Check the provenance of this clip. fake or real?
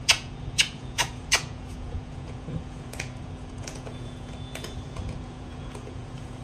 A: fake